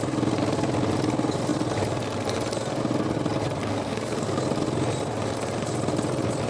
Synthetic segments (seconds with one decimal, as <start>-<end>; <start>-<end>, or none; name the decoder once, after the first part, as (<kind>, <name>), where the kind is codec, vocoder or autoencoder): 3.6-4.4 (codec, DAC)